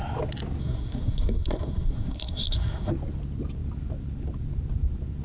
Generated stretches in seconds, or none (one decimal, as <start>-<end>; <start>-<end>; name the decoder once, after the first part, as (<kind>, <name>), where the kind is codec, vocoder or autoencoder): 0.6-2.9 (codec, SNAC)